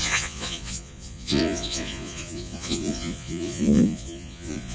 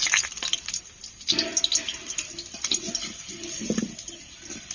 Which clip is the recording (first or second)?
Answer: second